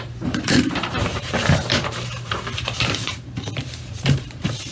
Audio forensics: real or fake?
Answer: fake